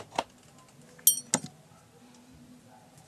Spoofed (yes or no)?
no